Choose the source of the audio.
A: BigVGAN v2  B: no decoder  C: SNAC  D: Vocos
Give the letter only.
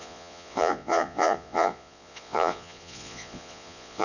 D